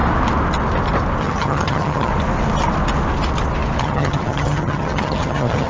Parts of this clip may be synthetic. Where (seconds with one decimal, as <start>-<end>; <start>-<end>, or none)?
1.2-2.1; 3.8-5.7